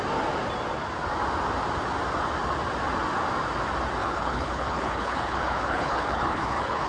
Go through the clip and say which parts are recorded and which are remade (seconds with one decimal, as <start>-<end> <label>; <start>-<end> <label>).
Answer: 0.0-4.0 recorded; 4.0-6.9 remade